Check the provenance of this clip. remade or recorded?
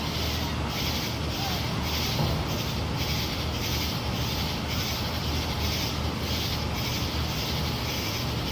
recorded